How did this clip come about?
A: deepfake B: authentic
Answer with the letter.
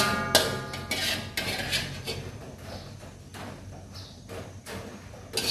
B